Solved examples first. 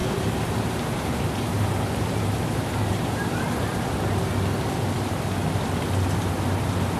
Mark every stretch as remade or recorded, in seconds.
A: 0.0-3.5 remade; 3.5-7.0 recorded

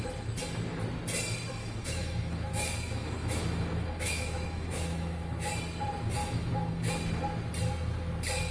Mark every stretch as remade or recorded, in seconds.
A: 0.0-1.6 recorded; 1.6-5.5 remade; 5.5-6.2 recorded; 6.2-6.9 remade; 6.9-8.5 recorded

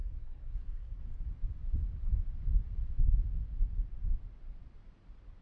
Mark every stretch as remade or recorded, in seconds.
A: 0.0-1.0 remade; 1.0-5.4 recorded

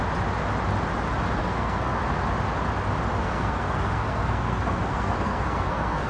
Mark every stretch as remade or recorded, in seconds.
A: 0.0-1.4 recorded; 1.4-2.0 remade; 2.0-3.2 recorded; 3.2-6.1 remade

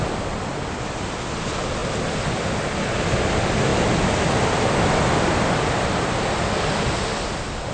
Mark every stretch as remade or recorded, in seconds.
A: 0.0-7.7 recorded